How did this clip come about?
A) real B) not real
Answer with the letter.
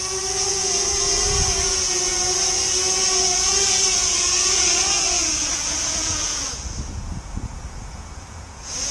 B